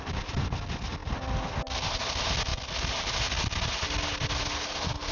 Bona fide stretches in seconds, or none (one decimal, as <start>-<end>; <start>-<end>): 0.0-5.1